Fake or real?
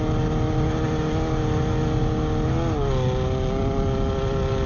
real